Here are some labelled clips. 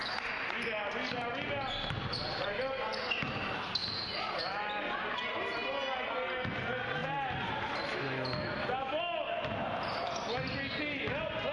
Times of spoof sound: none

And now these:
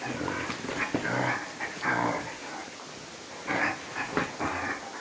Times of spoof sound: none

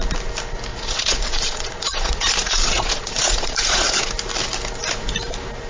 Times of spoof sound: 0.7-4.1 (vocoder, Vocos)

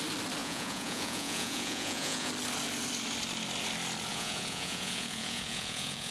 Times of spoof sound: 0.4-2.3 (vocoder, Vocos); 4.1-6.1

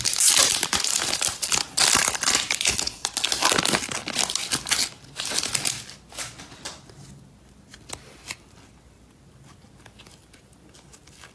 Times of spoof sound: none

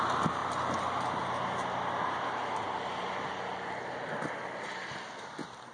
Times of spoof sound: none

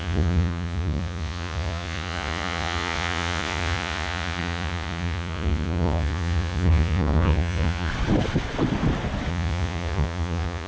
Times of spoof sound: 0.0-7.9 (vocoder, Vocos); 9.3-10.7

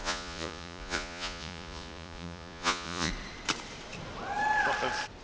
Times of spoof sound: 0.0-3.1 (vocoder, Vocos)